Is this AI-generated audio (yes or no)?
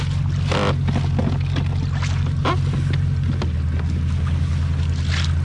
no